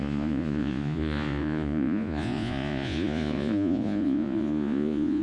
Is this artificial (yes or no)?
yes